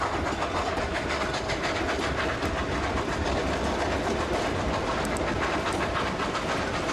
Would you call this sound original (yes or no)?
yes